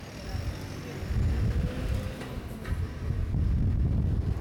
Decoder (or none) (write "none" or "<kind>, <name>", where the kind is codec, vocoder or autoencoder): none